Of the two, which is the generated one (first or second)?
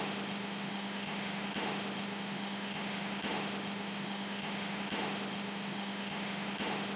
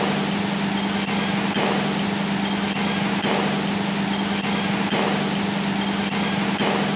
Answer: first